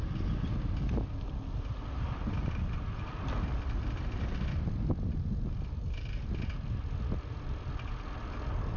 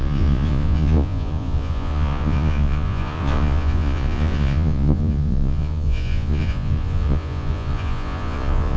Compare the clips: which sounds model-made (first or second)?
second